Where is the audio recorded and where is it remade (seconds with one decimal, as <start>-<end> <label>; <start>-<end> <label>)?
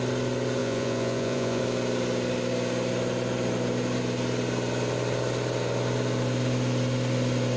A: 0.0-0.6 recorded; 0.6-1.6 remade; 1.6-7.6 recorded